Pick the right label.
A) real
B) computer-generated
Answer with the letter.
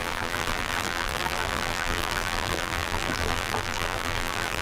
B